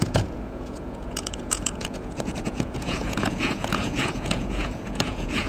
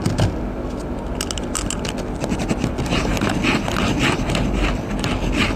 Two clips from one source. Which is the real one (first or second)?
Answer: second